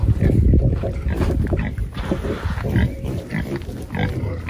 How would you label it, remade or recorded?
recorded